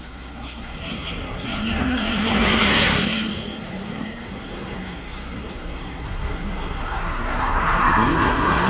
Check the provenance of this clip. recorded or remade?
remade